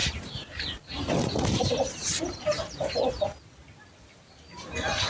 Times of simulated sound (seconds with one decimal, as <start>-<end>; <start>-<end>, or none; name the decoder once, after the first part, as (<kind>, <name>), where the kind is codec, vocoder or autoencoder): 0.0-3.1 (vocoder, BigVGAN v2)